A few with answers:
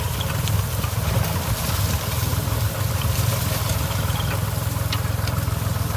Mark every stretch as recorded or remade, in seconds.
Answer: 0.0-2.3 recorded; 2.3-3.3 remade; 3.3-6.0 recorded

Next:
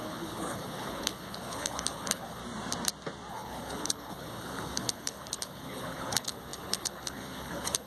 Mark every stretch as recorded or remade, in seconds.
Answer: 0.0-2.4 remade; 2.4-3.3 recorded; 3.3-7.9 remade

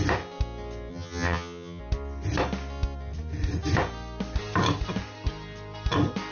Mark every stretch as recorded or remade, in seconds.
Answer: 0.0-0.9 recorded; 0.9-1.8 remade; 1.8-6.3 recorded

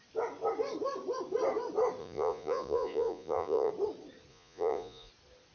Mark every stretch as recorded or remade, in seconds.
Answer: 0.0-2.0 recorded; 2.0-3.7 remade; 3.7-4.3 recorded; 4.3-5.1 remade; 5.1-5.5 recorded

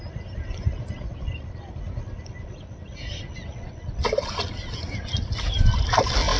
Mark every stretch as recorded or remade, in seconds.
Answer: 0.0-6.4 recorded

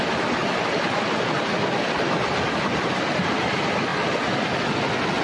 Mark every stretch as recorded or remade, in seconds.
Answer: 0.0-5.2 recorded

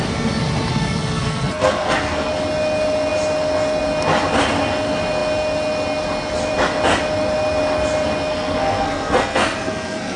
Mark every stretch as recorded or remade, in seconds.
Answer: 0.0-0.7 recorded; 0.7-2.3 remade; 2.3-8.3 recorded; 8.3-10.2 remade